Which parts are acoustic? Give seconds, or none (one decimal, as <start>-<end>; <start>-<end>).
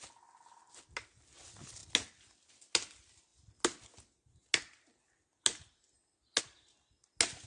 0.0-7.5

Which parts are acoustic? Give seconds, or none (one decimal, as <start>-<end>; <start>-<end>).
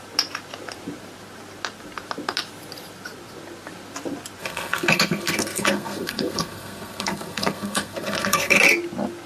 0.0-4.4; 8.6-9.3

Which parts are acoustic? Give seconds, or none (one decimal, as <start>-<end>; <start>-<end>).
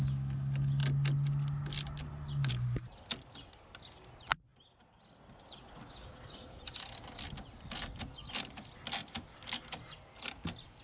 0.0-10.8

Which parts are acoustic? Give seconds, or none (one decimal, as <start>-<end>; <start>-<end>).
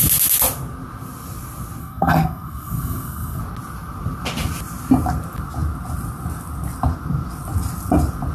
0.0-1.8; 3.4-8.3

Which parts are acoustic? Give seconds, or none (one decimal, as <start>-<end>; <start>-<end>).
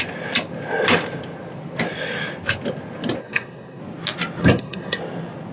0.0-3.2; 3.8-4.4; 5.0-5.5